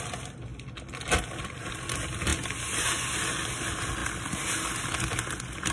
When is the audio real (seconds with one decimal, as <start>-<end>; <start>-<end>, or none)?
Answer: 0.0-5.7